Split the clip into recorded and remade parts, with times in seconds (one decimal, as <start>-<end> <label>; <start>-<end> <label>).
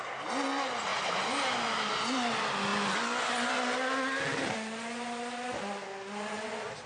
0.0-6.9 recorded